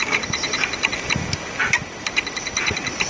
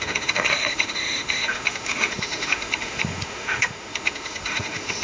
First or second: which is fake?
second